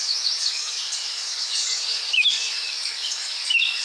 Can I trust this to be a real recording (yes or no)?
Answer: no